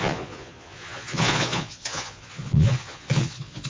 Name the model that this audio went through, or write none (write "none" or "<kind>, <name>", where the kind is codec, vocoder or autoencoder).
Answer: vocoder, Vocos